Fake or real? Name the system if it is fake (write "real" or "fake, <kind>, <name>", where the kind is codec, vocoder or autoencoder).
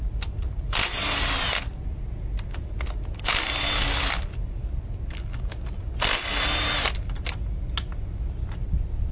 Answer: real